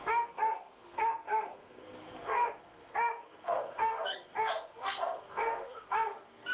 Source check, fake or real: fake